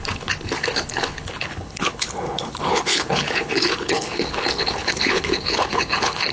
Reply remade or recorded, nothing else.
remade